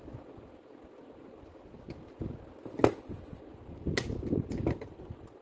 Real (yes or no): yes